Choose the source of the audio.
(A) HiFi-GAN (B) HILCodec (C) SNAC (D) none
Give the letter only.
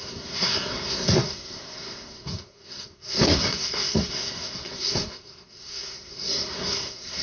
C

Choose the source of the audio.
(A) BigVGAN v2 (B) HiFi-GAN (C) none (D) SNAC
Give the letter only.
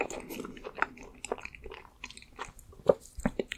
C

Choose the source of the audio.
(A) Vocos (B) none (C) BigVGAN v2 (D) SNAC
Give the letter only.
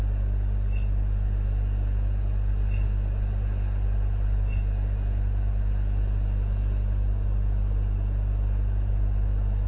B